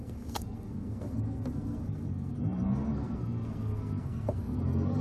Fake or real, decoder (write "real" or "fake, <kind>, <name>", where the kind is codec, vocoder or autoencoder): fake, codec, SNAC